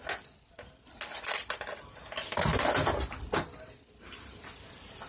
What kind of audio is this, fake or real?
real